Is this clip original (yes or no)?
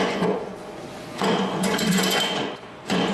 no